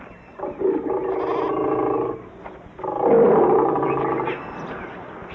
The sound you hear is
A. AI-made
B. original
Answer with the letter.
B